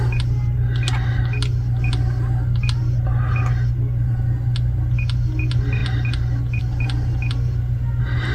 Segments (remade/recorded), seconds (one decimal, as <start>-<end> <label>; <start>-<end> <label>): 0.0-8.3 recorded